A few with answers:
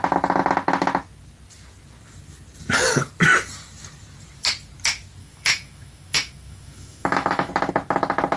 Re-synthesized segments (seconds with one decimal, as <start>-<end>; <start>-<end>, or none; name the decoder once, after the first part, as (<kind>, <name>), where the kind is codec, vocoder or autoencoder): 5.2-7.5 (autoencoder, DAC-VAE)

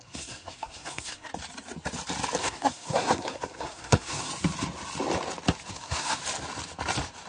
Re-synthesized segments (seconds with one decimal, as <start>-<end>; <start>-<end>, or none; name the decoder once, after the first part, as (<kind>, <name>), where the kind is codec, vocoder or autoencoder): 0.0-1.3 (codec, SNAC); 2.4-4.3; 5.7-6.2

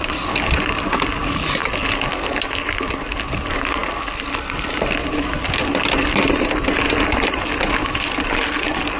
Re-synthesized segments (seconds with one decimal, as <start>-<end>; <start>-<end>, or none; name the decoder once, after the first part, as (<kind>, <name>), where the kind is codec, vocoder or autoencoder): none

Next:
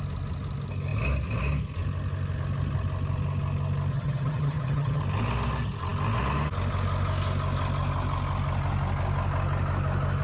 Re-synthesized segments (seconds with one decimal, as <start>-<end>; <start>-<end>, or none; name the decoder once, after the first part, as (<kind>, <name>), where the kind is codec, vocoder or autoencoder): 3.9-5.0 (vocoder, HiFi-GAN)